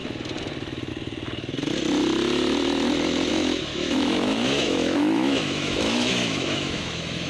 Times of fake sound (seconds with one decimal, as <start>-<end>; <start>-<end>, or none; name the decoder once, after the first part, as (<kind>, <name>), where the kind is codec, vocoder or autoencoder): 3.3-7.3 (autoencoder, DAC-VAE)